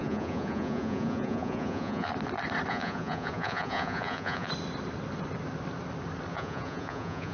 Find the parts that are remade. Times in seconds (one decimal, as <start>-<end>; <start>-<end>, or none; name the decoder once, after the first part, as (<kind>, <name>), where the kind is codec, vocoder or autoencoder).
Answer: 0.0-2.1 (vocoder, Vocos); 2.7-4.5; 6.3-7.3